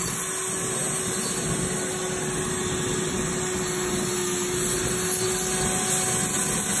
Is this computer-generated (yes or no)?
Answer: no